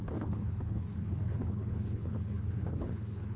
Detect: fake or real fake